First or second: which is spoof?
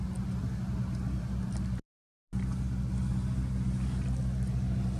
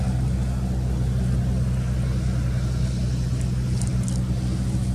first